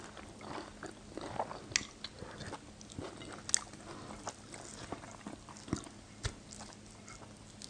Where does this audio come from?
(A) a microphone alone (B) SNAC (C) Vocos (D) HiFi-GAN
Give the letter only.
A